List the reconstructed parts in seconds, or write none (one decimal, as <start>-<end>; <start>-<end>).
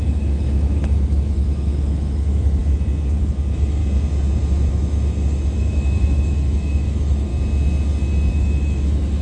0.0-2.6; 3.2-3.8; 4.7-7.3; 8.3-9.2